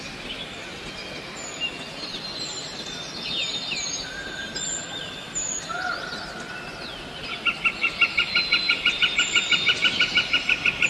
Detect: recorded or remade recorded